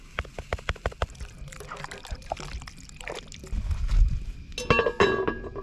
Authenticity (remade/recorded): recorded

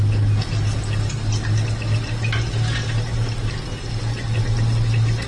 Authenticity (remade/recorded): recorded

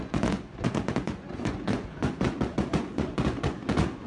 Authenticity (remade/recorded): remade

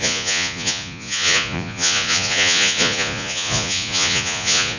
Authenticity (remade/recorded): remade